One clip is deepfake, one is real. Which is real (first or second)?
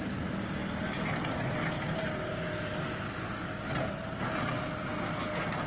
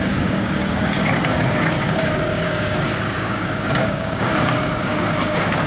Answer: first